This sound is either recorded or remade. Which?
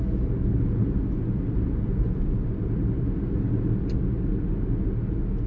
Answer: recorded